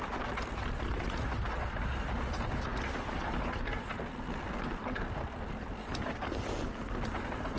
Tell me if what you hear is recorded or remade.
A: recorded